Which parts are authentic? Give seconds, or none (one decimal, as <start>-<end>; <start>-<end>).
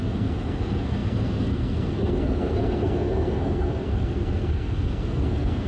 none